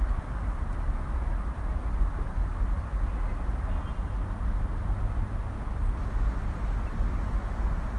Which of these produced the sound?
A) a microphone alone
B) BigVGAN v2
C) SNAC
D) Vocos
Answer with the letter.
A